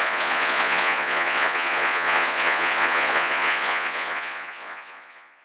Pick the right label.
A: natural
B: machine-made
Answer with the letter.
B